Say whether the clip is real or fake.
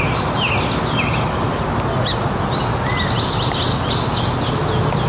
real